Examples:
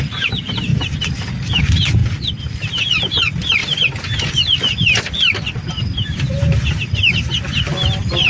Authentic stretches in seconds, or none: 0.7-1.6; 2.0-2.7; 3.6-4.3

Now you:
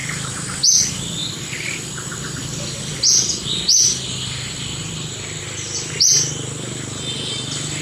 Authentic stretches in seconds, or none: 0.6-1.2; 5.9-7.8